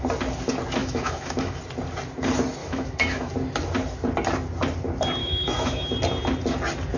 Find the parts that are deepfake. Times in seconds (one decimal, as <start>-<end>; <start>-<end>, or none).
0.8-1.6; 2.6-3.3; 5.2-5.9

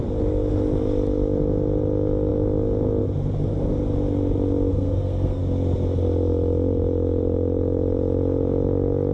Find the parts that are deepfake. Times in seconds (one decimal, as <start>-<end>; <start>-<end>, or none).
4.7-5.4

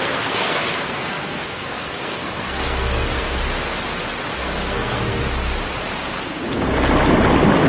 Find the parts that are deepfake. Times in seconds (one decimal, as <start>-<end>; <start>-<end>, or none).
0.0-3.4; 4.4-5.2